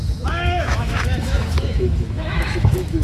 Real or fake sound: fake